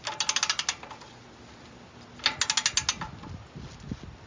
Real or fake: real